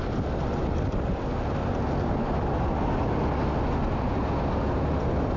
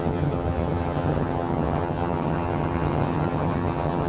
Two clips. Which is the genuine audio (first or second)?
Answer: first